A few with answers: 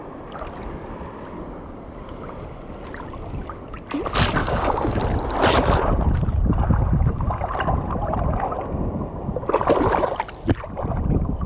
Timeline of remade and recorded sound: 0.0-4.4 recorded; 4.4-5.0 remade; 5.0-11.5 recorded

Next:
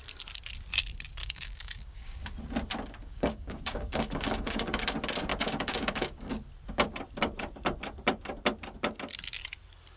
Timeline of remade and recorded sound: 0.0-1.2 recorded; 1.2-2.2 remade; 2.2-3.0 recorded; 3.0-4.8 remade; 4.8-5.3 recorded; 5.3-6.3 remade; 6.3-10.0 recorded

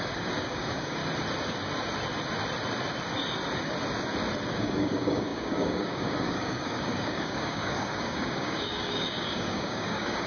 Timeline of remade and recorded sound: 0.0-1.0 remade; 1.0-4.5 recorded; 4.5-10.3 remade

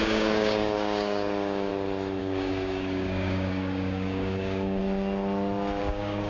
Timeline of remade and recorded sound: 0.0-1.7 remade; 1.7-2.2 recorded; 2.2-4.8 remade; 4.8-5.8 recorded; 5.8-6.3 remade

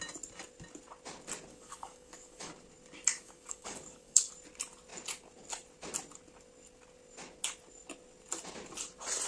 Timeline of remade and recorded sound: 0.0-1.5 recorded; 1.5-2.5 remade; 2.5-3.1 recorded; 3.1-4.3 remade; 4.3-9.3 recorded

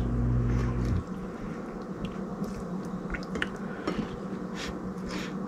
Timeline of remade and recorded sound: 0.0-5.5 recorded